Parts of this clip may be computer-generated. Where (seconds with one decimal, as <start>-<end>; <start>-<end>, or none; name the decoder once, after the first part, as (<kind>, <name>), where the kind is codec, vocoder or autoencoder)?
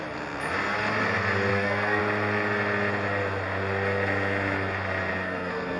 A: 1.5-2.0 (codec, SNAC); 5.1-5.8